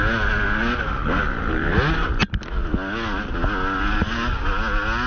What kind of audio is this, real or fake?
real